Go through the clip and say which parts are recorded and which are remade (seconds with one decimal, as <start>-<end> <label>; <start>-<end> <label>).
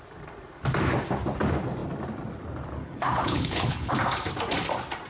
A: 0.0-2.8 recorded; 2.8-3.9 remade; 3.9-5.1 recorded